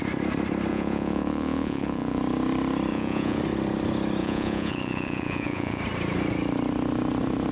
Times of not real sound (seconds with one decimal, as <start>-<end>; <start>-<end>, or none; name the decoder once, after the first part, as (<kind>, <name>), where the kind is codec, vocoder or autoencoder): 0.7-2.2 (vocoder, Vocos); 2.9-3.4; 4.2-5.8